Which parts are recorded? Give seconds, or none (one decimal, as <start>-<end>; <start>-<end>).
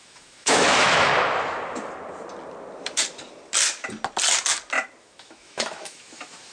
1.1-5.0